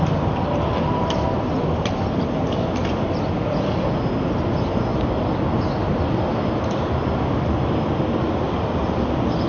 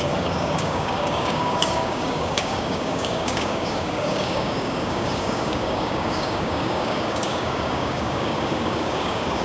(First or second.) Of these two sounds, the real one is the first